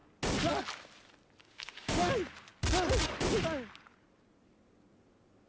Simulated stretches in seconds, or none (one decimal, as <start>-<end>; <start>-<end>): 1.4-2.1